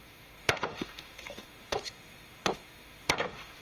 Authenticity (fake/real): fake